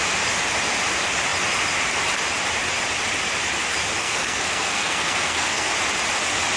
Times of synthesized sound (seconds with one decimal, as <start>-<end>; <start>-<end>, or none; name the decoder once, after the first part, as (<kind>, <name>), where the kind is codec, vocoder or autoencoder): 4.0-5.7 (codec, SNAC)